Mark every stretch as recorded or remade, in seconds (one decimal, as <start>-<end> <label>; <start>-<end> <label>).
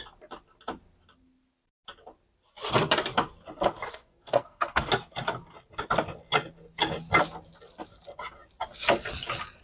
0.0-3.9 recorded; 3.9-4.9 remade; 4.9-9.6 recorded